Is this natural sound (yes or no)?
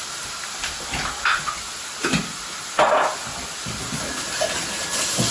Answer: yes